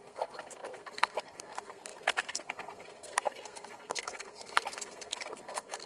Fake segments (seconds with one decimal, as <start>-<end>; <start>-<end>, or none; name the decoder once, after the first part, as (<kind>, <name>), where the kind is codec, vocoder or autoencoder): 0.0-5.9 (codec, SNAC)